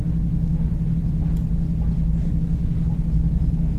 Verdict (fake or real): real